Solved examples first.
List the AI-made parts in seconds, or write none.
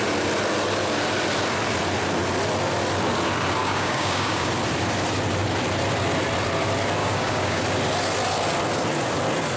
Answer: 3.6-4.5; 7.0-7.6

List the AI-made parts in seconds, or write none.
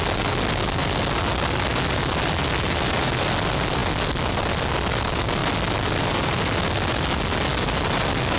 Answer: none